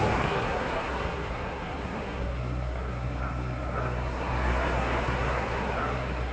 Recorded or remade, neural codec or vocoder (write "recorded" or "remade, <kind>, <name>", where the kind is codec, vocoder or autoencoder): remade, codec, SNAC